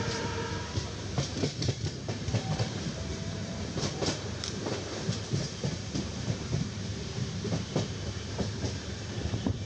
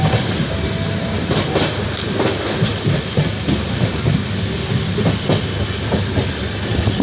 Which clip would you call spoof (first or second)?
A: first